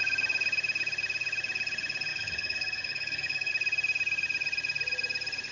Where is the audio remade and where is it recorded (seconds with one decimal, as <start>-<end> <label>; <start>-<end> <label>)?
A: 0.0-2.1 recorded; 2.1-3.5 remade; 3.5-5.5 recorded